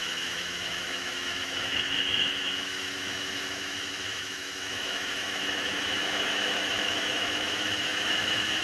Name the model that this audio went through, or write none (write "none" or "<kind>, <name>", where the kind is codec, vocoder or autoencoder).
autoencoder, DAC-VAE